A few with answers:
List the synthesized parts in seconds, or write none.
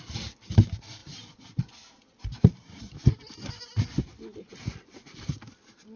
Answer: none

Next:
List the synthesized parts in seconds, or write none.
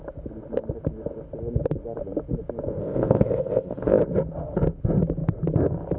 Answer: 2.8-4.0 (codec, ZipCodec)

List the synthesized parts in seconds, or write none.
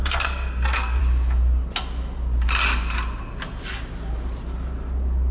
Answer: 0.0-1.0 (codec, SNAC)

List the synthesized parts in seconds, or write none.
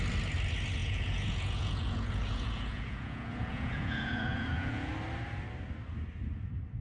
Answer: 0.8-4.9 (vocoder, Vocos)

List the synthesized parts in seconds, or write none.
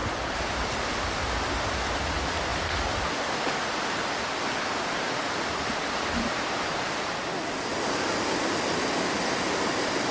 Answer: none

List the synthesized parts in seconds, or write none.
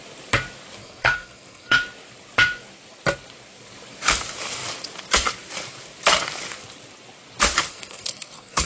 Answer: 0.8-1.8 (codec, SNAC); 7.7-8.7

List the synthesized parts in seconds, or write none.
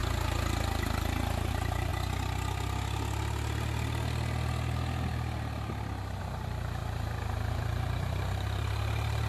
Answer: 1.5-1.9 (vocoder, BigVGAN v2); 6.2-9.3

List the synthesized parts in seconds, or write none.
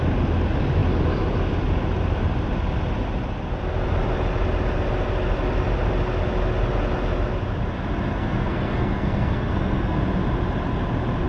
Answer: 8.1-10.0 (codec, SNAC)